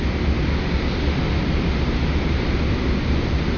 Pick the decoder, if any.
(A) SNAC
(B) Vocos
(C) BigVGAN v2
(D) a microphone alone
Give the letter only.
D